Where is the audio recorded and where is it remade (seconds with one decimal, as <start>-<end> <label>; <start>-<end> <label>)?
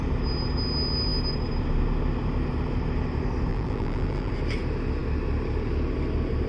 0.0-3.5 recorded; 3.5-4.3 remade; 4.3-6.5 recorded